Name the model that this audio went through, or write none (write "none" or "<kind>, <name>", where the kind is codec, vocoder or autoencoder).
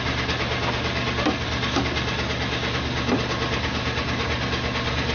none